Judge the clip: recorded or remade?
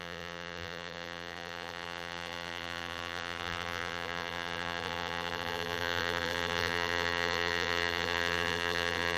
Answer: remade